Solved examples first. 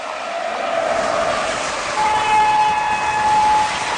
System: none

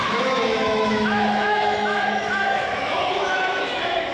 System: autoencoder, DAC-VAE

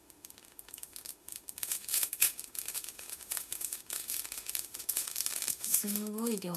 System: autoencoder, DAC-VAE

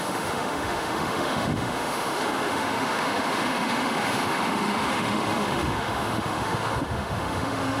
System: autoencoder, DAC-VAE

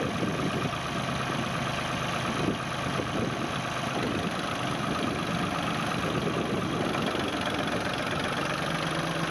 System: none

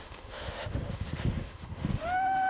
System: autoencoder, DAC-VAE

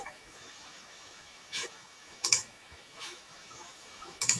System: autoencoder, DAC-VAE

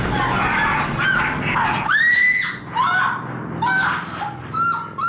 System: none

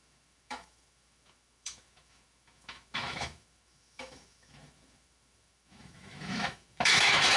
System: autoencoder, DAC-VAE